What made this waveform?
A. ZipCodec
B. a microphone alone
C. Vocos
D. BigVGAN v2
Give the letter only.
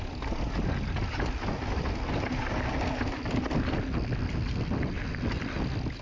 B